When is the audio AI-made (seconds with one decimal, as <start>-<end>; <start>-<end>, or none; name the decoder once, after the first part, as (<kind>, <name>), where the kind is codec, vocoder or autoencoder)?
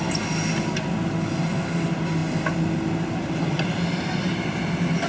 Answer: none